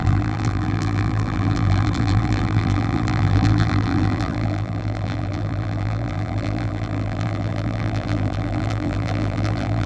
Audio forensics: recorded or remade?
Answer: remade